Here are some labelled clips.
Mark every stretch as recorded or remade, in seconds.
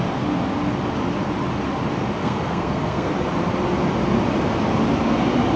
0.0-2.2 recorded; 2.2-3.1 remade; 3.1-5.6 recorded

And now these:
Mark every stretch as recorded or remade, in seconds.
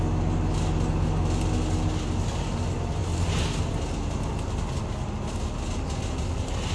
0.0-6.7 recorded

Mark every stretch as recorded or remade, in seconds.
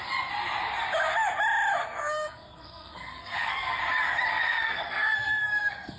0.0-1.8 recorded; 1.8-3.8 remade; 3.8-4.3 recorded; 4.3-6.0 remade